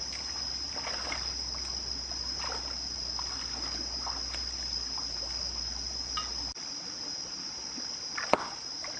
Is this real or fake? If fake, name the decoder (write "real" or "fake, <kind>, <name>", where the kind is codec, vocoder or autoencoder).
real